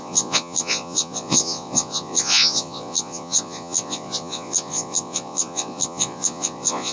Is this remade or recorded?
remade